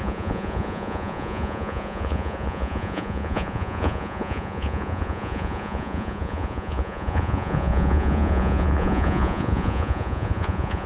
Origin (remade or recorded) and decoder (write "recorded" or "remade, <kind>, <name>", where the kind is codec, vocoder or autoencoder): remade, vocoder, Vocos